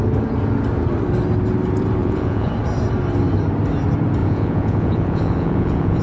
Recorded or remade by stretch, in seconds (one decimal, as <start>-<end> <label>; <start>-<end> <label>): 0.0-2.0 recorded; 2.0-2.5 remade; 2.5-4.2 recorded; 4.2-6.0 remade